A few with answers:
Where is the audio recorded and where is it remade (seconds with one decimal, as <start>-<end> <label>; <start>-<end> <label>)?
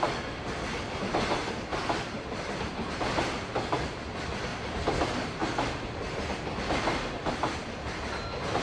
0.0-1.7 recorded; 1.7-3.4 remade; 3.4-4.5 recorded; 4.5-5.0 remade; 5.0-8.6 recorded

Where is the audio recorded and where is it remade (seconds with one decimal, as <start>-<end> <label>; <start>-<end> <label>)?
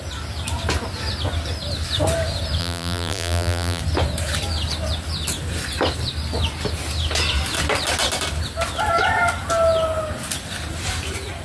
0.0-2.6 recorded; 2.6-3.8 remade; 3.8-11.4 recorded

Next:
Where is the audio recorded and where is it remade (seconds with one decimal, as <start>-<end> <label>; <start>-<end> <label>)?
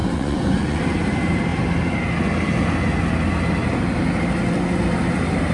0.0-0.8 remade; 0.8-5.5 recorded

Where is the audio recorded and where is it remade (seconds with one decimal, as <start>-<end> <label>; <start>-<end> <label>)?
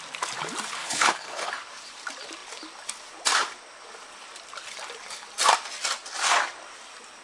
0.0-0.8 recorded; 0.8-1.5 remade; 1.5-7.2 recorded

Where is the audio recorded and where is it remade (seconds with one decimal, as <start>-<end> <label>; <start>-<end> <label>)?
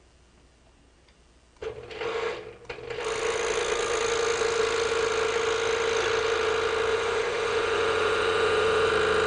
0.0-6.9 recorded; 6.9-8.9 remade; 8.9-9.3 recorded